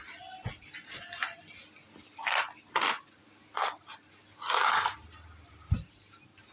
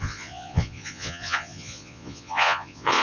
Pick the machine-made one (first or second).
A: second